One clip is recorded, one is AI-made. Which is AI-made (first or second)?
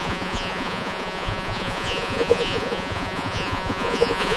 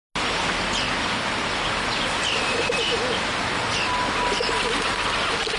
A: first